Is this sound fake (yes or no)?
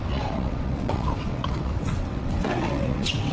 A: yes